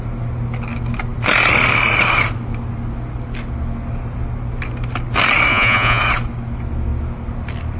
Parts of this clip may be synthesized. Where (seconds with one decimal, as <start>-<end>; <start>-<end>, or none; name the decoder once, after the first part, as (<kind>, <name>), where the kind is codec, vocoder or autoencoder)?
5.5-6.0 (vocoder, Vocos)